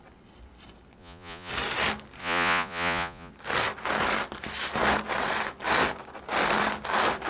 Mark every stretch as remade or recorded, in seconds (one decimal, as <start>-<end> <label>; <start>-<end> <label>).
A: 0.0-1.0 recorded; 1.0-1.5 remade; 1.5-2.2 recorded; 2.2-3.3 remade; 3.3-7.3 recorded

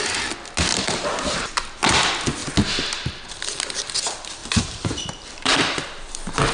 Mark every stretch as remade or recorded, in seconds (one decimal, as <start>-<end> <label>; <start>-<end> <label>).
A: 0.0-0.7 recorded; 0.7-1.5 remade; 1.5-4.4 recorded; 4.4-6.1 remade; 6.1-6.5 recorded

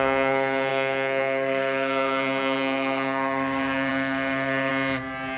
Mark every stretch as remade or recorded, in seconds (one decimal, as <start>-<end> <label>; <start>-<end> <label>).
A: 0.0-4.7 remade; 4.7-5.4 recorded